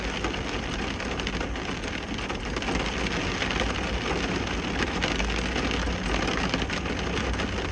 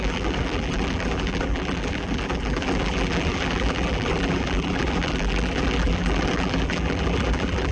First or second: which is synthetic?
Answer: second